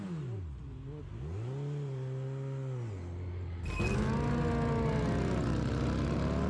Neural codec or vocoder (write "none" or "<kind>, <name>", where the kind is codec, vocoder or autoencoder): none